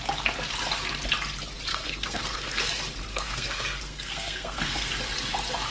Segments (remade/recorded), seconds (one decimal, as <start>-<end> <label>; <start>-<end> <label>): 0.0-1.7 recorded; 1.7-2.7 remade; 2.7-3.1 recorded; 3.1-4.9 remade; 4.9-5.7 recorded